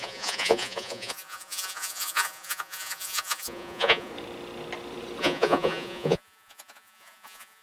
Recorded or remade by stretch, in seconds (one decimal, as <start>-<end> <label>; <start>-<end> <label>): 0.0-4.1 remade; 4.1-5.2 recorded; 5.2-7.6 remade